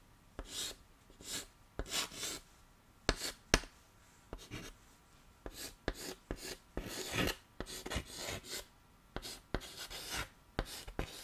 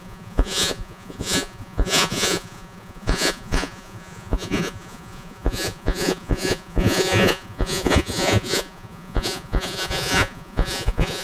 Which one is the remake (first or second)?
second